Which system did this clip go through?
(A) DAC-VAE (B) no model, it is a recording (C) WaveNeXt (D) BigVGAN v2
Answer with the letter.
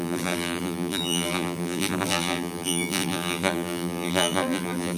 D